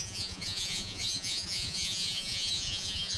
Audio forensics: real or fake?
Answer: fake